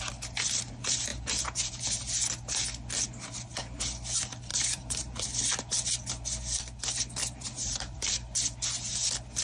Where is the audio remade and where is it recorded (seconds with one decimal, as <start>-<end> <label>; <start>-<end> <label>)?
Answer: 0.0-1.1 recorded; 1.1-1.8 remade; 1.8-4.5 recorded; 4.5-5.3 remade; 5.3-7.2 recorded; 7.2-8.1 remade; 8.1-9.4 recorded